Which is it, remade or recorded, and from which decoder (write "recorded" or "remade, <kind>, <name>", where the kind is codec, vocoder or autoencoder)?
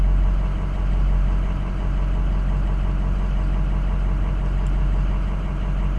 recorded